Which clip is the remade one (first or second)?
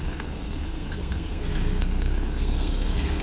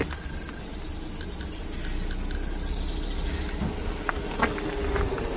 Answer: first